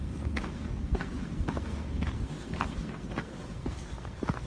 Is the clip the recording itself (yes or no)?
no